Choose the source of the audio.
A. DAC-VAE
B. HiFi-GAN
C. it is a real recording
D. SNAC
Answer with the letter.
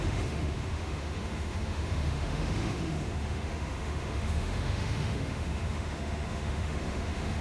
A